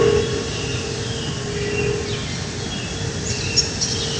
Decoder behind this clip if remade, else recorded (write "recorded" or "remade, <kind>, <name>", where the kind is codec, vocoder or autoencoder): recorded